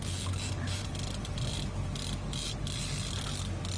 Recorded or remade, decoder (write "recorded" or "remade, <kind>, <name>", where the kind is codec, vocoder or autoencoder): recorded